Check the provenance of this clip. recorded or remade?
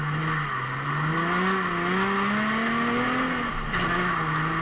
recorded